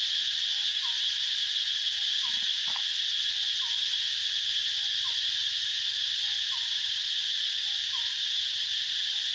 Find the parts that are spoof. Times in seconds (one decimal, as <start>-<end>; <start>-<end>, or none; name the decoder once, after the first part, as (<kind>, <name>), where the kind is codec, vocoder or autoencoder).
none